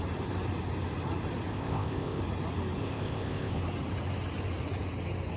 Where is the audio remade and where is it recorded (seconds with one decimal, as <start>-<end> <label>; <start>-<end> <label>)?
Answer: 0.0-1.5 recorded; 1.5-2.2 remade; 2.2-2.8 recorded; 2.8-3.6 remade; 3.6-5.4 recorded